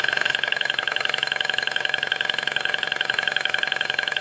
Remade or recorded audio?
remade